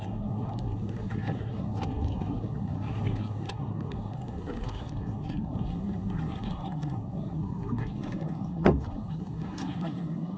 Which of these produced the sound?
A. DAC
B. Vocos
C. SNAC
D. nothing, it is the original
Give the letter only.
C